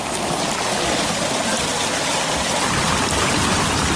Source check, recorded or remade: recorded